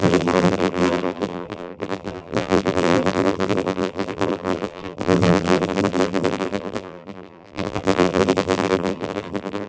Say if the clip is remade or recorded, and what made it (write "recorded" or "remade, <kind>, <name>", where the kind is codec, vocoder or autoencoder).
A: remade, vocoder, BigVGAN v2